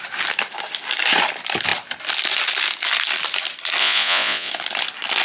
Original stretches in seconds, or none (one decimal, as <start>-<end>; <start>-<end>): 0.0-3.8; 4.5-5.2